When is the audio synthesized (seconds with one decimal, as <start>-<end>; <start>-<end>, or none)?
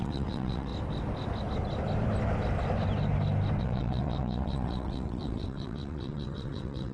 0.0-0.7; 3.6-6.9